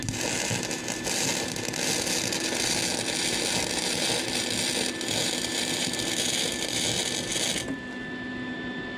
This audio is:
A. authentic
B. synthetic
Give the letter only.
A